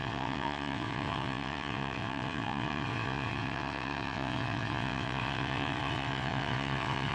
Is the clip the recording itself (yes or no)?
no